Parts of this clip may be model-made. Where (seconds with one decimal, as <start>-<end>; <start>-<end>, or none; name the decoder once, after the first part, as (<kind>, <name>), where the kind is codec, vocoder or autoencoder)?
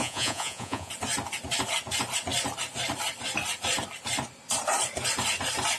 0.0-0.9 (vocoder, Vocos)